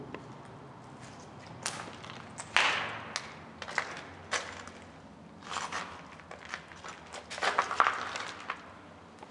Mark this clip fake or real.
real